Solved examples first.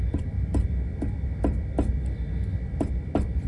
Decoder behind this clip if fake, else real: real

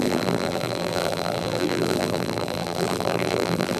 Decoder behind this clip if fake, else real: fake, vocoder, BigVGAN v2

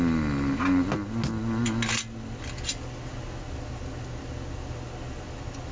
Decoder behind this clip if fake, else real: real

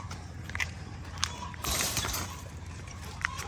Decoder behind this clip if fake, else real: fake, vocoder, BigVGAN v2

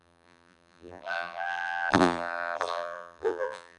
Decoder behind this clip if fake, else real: fake, vocoder, BigVGAN v2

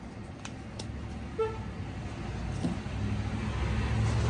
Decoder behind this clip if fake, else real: real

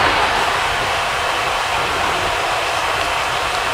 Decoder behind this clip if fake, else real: fake, vocoder, BigVGAN v2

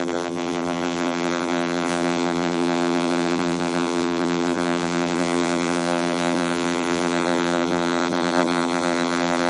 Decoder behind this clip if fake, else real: fake, vocoder, BigVGAN v2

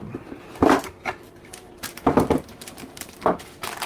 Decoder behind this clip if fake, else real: fake, vocoder, BigVGAN v2